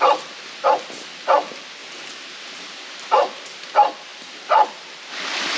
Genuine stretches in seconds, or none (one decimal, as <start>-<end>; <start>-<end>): 0.0-1.8; 3.5-5.6